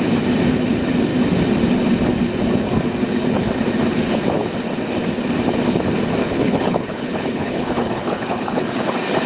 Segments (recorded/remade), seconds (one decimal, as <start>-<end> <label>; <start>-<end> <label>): 0.0-6.2 recorded; 6.2-8.8 remade; 8.8-9.3 recorded